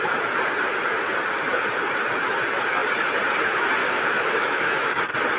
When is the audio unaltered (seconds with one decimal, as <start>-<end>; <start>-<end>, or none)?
0.0-3.8; 5.0-5.4